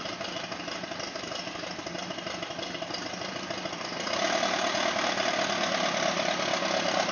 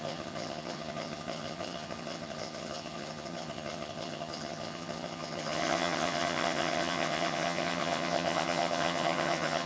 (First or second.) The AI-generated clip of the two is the second